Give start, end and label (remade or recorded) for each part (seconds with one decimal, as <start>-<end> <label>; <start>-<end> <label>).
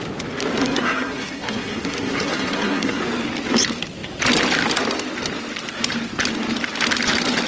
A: 0.0-0.6 recorded; 0.6-3.0 remade; 3.0-7.5 recorded